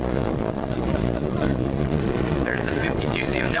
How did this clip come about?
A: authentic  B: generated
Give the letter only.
B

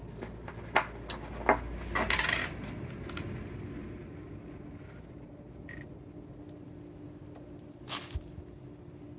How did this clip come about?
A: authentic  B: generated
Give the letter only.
A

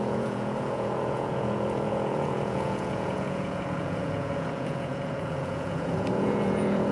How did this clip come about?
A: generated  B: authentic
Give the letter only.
A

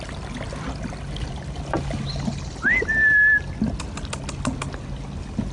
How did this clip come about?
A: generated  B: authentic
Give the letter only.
B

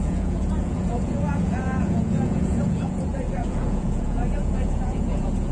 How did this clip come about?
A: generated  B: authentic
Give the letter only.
A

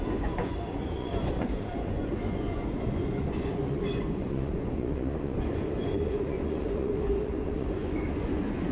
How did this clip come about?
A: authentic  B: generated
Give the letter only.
B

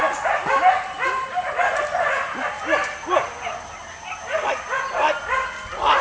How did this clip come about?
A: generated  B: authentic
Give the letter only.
B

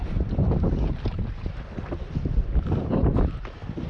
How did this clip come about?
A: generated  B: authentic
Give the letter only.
B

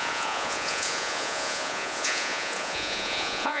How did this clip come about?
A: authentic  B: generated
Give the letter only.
B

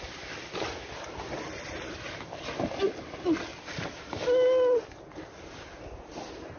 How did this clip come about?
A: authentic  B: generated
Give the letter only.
A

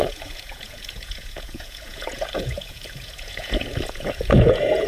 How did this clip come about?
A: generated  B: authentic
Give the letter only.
A